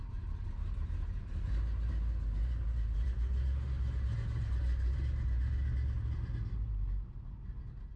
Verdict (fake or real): real